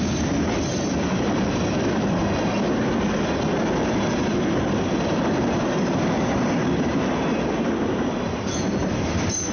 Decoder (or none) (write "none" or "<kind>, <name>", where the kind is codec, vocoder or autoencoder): none